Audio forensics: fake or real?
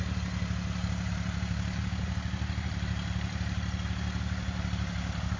fake